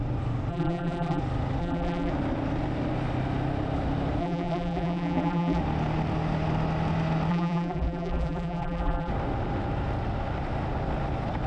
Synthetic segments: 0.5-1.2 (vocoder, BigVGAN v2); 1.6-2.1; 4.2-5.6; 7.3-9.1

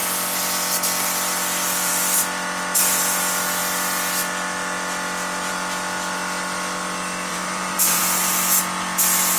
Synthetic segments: 7.3-8.0 (vocoder, BigVGAN v2)

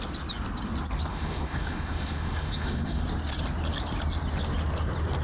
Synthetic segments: 1.1-3.0 (autoencoder, DAC-VAE)

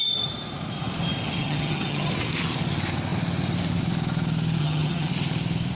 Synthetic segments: 1.4-2.1 (vocoder, HiFi-GAN); 4.6-5.1